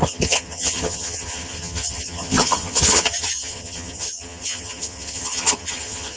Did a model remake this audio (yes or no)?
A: yes